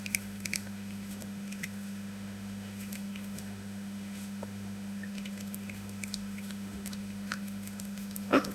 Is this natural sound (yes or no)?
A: no